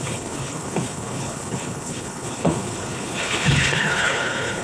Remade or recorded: remade